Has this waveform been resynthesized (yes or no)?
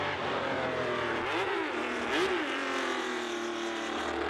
no